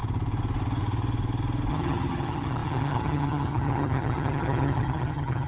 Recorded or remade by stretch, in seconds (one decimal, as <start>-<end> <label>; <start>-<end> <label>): 0.0-1.7 recorded; 1.7-5.5 remade